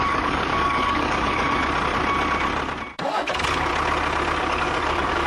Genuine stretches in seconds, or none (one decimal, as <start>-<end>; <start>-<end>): 1.6-3.0; 3.7-4.4